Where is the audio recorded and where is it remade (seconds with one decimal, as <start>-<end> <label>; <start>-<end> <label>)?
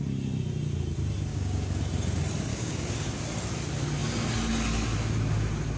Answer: 0.0-1.3 recorded; 1.3-1.8 remade; 1.8-2.5 recorded; 2.5-3.2 remade; 3.2-5.8 recorded